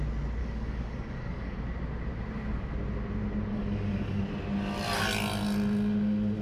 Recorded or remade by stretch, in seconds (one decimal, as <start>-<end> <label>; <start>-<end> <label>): 0.0-0.4 recorded; 0.4-1.6 remade; 1.6-3.5 recorded; 3.5-4.2 remade; 4.2-6.4 recorded